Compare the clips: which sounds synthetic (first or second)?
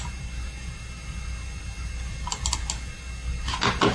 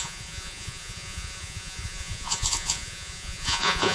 second